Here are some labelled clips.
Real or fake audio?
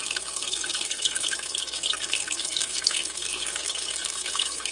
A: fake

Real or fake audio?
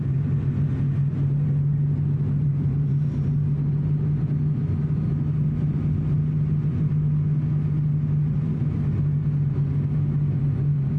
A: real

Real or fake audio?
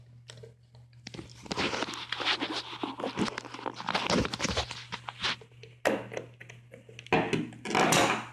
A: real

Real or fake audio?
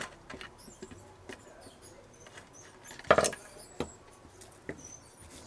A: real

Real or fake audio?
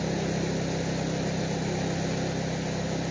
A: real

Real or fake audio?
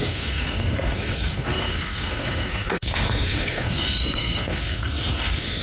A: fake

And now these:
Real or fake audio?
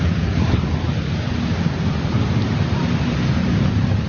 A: real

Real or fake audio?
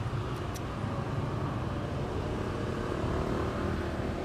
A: real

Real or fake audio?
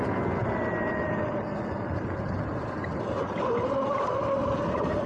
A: real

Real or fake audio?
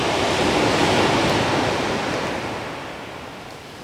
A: real